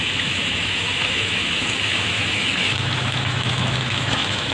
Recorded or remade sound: remade